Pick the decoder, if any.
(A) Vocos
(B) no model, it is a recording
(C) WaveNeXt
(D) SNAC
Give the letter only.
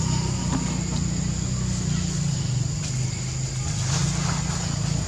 B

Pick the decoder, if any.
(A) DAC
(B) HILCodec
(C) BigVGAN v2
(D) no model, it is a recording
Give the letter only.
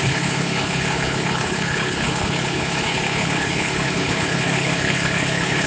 B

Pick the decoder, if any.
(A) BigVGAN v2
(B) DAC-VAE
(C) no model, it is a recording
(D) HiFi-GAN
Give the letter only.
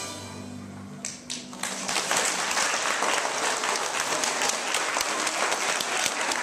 C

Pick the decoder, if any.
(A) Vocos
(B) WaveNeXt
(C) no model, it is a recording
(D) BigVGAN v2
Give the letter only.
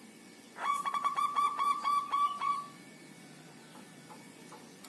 A